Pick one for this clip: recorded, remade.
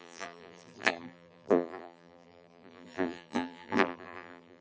remade